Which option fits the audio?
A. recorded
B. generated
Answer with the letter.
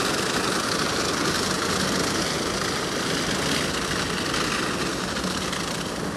A